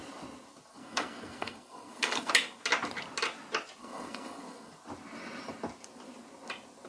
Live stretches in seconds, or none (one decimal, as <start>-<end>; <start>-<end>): 0.0-0.7; 2.3-3.8; 4.7-6.9